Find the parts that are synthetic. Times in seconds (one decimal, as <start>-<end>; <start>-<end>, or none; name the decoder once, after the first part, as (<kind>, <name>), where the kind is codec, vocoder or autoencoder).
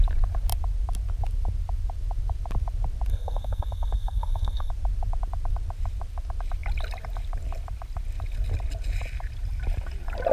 3.1-4.7 (codec, SNAC)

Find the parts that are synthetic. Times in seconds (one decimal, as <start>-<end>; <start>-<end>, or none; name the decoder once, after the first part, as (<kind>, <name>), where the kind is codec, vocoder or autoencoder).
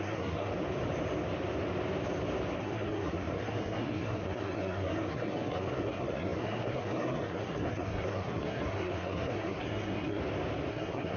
0.0-0.5 (codec, SNAC); 2.6-10.2; 10.7-11.2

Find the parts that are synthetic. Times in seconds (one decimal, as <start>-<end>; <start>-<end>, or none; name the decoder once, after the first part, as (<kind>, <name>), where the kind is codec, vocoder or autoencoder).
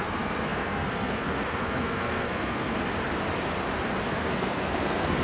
0.0-2.8 (codec, SNAC); 4.1-5.2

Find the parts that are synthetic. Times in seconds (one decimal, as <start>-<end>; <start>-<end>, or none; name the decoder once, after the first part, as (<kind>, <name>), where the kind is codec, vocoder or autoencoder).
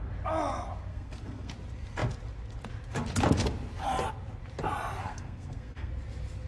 0.9-1.5 (codec, SNAC); 5.0-5.9